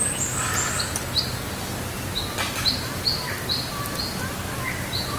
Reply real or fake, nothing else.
real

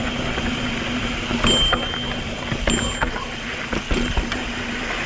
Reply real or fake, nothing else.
real